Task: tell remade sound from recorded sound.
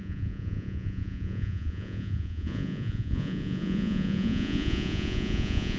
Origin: remade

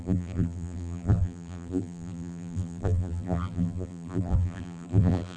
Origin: remade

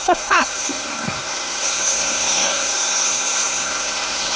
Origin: remade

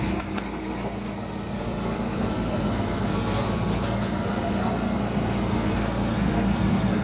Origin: remade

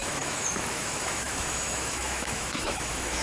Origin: remade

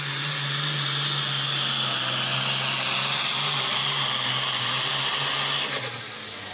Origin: recorded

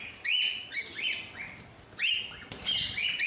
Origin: recorded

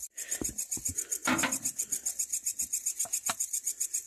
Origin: recorded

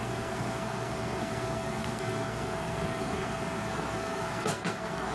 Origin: remade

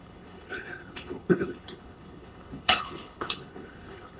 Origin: remade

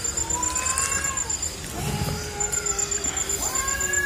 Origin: recorded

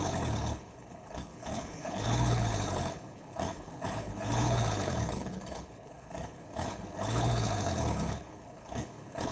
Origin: remade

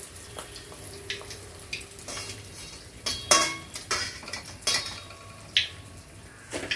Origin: recorded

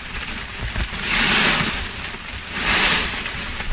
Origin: recorded